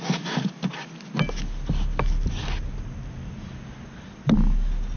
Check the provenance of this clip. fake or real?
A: real